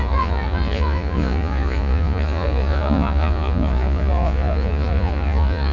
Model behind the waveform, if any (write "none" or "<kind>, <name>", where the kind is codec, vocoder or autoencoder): vocoder, Vocos